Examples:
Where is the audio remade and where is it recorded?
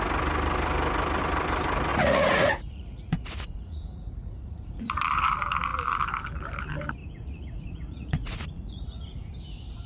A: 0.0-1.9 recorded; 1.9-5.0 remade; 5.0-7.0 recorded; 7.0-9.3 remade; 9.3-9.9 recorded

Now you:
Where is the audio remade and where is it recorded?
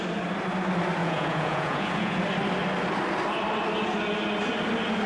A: 0.0-1.0 recorded; 1.0-2.2 remade; 2.2-5.1 recorded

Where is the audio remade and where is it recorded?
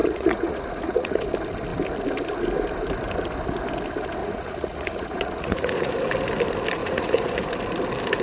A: 0.0-1.2 remade; 1.2-4.2 recorded; 4.2-5.9 remade; 5.9-6.8 recorded; 6.8-7.3 remade; 7.3-8.2 recorded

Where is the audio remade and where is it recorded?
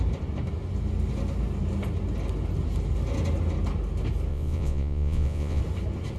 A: 0.0-4.3 recorded; 4.3-5.6 remade; 5.6-6.2 recorded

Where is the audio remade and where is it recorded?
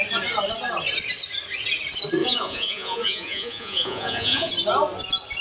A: 0.0-2.2 recorded; 2.2-4.5 remade; 4.5-5.4 recorded